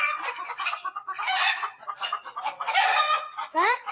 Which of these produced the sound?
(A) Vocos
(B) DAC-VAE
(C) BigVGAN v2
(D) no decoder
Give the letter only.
A